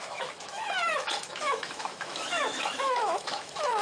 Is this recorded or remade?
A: remade